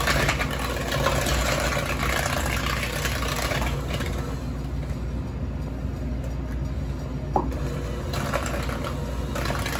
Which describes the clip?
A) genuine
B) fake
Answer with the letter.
A